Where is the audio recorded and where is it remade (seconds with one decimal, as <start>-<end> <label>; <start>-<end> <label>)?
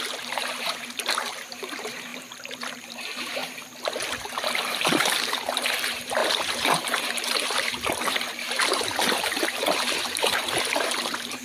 0.0-2.1 remade; 2.1-2.7 recorded; 2.7-3.4 remade; 3.4-4.3 recorded; 4.3-11.4 remade